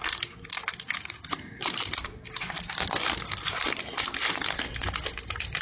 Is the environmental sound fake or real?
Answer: real